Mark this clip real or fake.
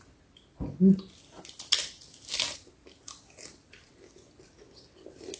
real